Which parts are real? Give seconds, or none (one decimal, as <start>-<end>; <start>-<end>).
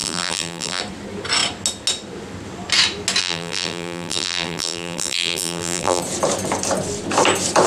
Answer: 0.8-3.2; 6.0-7.7